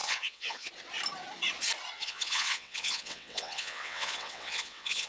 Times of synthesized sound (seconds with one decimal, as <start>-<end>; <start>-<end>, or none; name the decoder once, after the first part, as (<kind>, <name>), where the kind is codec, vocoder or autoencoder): 0.0-0.7 (vocoder, WaveNeXt); 2.0-5.1